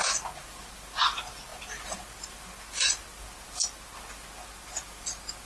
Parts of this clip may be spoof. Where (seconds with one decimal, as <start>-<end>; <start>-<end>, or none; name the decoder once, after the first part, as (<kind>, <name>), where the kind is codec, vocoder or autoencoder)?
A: none